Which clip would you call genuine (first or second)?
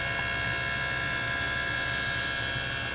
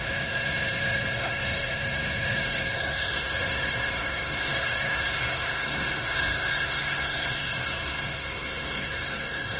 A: first